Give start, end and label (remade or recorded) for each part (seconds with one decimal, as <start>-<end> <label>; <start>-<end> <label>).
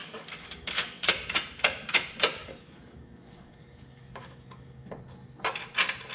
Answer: 0.0-1.1 remade; 1.1-2.4 recorded; 2.4-4.9 remade; 4.9-6.1 recorded